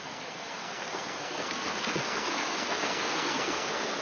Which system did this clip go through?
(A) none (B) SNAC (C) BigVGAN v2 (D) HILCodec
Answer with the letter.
B